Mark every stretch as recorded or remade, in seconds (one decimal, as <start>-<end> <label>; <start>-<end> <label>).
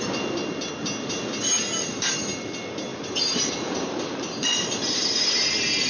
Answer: 0.0-2.9 recorded; 2.9-5.2 remade; 5.2-5.9 recorded